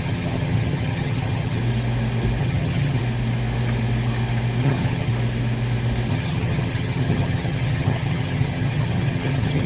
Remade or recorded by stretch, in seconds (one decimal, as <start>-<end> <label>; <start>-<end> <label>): 0.0-1.6 remade; 1.6-2.4 recorded; 2.4-3.0 remade; 3.0-4.6 recorded; 4.6-5.1 remade; 5.1-6.1 recorded; 6.1-9.7 remade